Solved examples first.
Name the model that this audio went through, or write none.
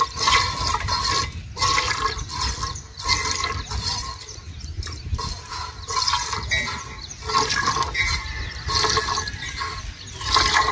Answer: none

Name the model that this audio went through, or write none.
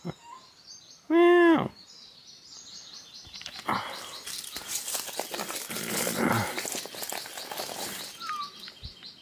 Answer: none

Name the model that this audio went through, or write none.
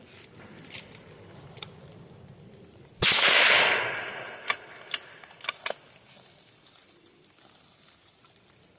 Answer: vocoder, BigVGAN v2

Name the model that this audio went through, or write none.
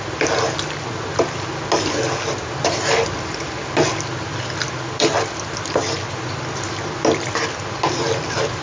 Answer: none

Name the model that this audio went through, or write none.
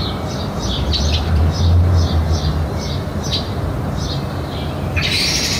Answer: vocoder, BigVGAN v2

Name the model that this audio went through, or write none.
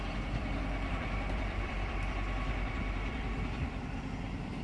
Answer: vocoder, BigVGAN v2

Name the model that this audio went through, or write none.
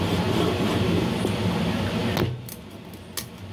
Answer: none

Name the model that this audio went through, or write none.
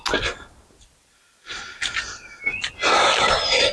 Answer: none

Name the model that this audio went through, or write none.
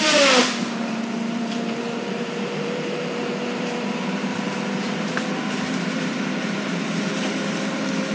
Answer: vocoder, BigVGAN v2